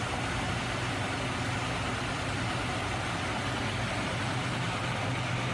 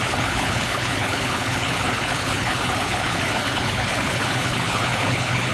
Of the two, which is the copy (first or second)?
second